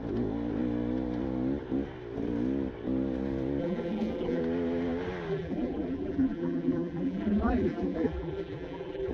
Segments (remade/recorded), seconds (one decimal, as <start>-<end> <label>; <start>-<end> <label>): 0.0-3.6 recorded; 3.6-4.4 remade; 4.4-5.3 recorded; 5.3-9.1 remade